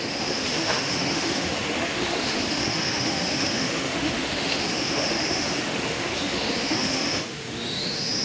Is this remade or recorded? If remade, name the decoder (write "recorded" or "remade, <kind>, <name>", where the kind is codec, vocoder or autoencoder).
remade, autoencoder, DAC-VAE